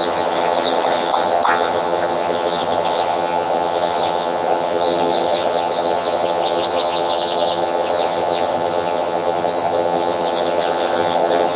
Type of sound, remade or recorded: remade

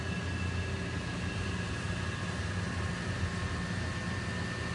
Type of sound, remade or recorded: recorded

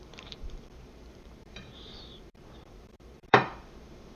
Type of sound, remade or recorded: remade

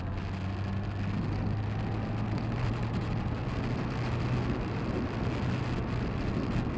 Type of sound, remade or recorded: recorded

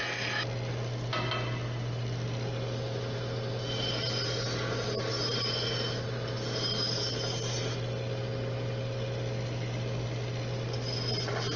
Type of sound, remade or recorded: recorded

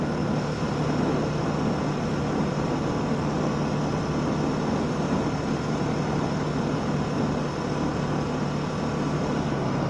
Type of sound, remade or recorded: recorded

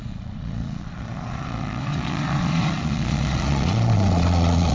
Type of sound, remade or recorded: remade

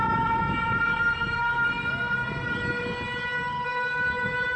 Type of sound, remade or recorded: recorded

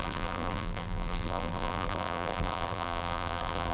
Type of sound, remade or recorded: remade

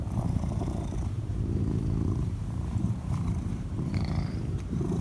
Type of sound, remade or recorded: remade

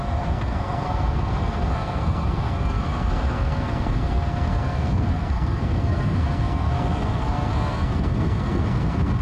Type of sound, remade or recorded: remade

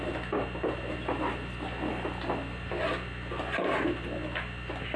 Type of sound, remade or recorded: recorded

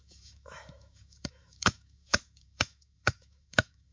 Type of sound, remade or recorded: remade